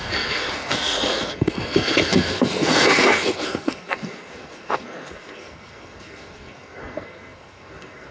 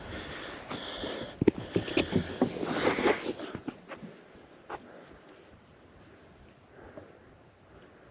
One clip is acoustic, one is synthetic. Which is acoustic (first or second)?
second